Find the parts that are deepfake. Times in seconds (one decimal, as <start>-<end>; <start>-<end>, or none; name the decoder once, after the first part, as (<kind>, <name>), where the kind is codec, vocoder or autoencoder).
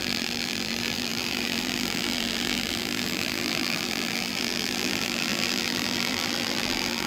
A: 0.0-7.1 (vocoder, BigVGAN v2)